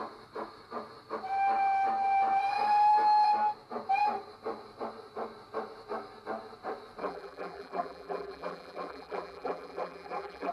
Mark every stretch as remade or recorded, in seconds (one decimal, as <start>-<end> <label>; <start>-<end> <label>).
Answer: 0.0-7.0 recorded; 7.0-10.5 remade